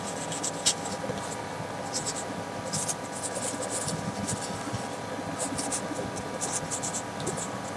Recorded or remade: recorded